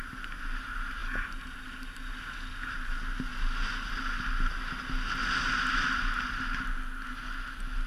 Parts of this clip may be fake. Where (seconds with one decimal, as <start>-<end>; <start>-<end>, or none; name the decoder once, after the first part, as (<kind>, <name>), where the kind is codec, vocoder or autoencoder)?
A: none